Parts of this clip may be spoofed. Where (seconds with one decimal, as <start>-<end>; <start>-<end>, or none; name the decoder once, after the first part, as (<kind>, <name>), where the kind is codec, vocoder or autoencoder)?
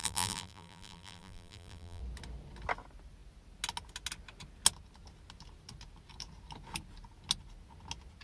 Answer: 0.0-2.0 (vocoder, BigVGAN v2)